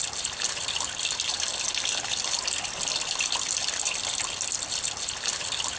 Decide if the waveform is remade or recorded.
recorded